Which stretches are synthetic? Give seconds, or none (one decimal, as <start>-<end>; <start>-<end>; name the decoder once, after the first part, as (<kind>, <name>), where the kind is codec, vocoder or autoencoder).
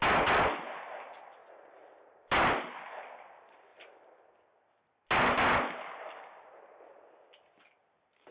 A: none